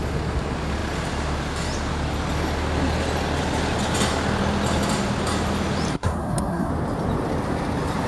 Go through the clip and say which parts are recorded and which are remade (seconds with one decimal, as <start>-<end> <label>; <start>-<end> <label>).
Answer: 0.0-5.9 recorded; 5.9-6.7 remade; 6.7-8.1 recorded